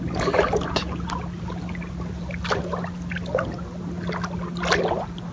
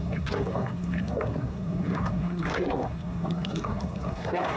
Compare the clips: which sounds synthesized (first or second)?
second